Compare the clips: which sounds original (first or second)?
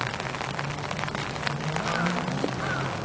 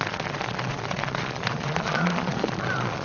first